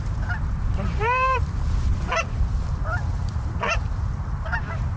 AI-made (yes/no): yes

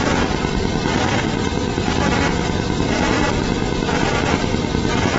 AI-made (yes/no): yes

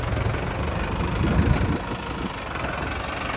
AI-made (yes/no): no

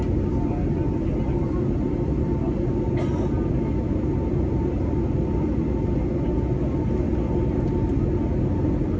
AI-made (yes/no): no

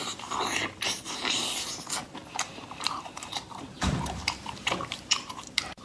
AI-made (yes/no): yes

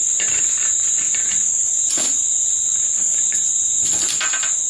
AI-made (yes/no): yes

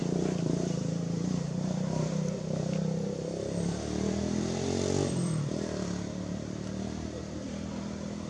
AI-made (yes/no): yes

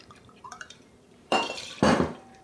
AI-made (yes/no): yes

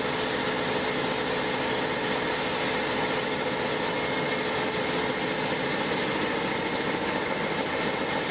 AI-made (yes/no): no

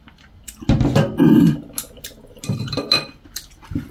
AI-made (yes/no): no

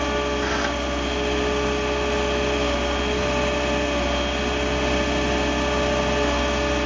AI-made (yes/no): no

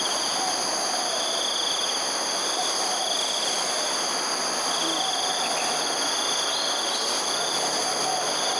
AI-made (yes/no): no